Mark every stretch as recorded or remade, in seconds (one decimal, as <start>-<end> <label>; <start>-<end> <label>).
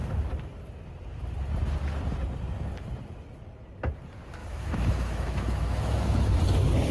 0.0-4.4 recorded; 4.4-6.4 remade; 6.4-6.9 recorded